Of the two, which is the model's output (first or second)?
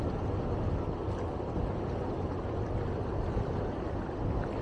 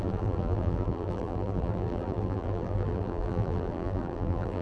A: second